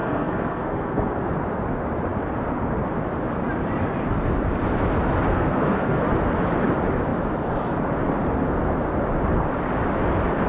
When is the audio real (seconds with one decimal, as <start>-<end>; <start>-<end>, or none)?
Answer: 1.1-5.3; 6.0-10.5